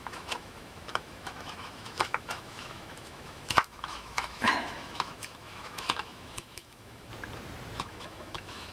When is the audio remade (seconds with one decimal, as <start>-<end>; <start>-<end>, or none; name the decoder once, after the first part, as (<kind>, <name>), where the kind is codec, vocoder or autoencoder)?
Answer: 0.0-7.1 (autoencoder, DAC-VAE); 7.8-8.7